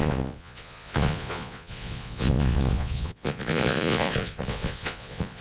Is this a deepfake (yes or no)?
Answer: yes